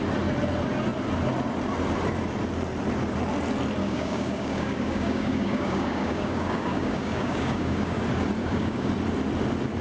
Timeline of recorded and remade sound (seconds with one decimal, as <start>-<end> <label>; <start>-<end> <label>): 0.0-3.8 recorded; 3.8-8.0 remade; 8.0-8.4 recorded; 8.4-8.9 remade; 8.9-9.8 recorded